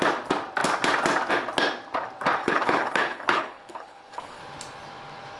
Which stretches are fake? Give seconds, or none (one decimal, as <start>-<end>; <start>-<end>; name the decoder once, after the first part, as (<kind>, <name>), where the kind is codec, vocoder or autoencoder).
2.4-4.4 (codec, HILCodec)